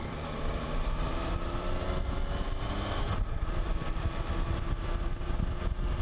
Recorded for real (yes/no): no